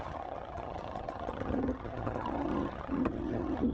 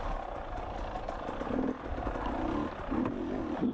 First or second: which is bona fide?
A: second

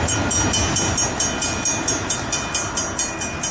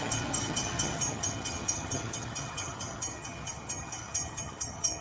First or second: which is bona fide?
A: first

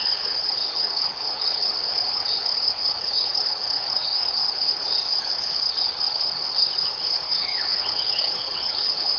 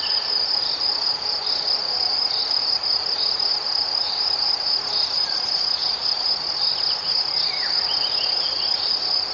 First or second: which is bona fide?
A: second